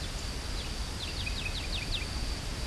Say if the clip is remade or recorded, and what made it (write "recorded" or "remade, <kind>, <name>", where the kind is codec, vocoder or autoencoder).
recorded